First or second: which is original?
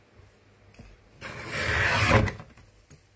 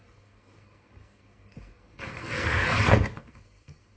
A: first